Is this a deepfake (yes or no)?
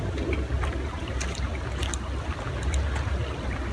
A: no